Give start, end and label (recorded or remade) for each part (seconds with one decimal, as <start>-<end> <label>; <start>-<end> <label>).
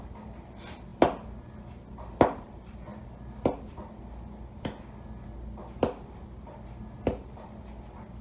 0.0-8.2 recorded